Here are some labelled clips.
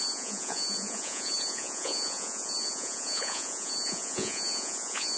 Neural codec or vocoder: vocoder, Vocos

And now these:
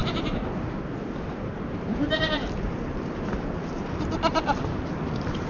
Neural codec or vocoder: none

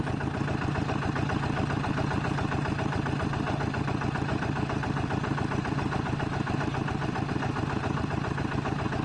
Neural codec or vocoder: none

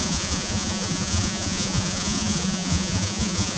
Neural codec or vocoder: vocoder, Vocos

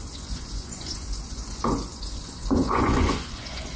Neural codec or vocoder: vocoder, Vocos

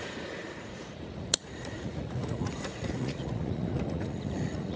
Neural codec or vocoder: vocoder, Vocos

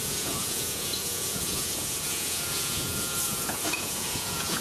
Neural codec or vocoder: vocoder, Vocos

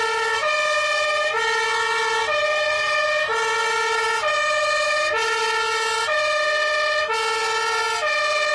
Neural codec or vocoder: none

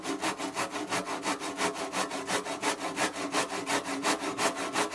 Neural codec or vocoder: none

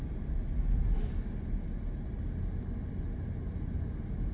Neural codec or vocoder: none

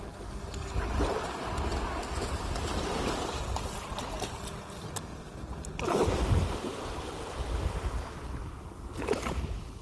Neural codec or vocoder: none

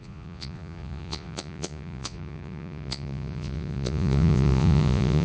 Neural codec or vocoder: vocoder, Vocos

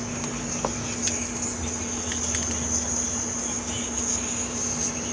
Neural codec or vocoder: none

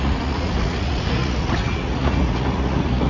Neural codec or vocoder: vocoder, Vocos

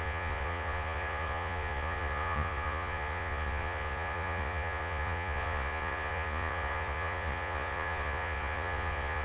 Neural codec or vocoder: vocoder, Vocos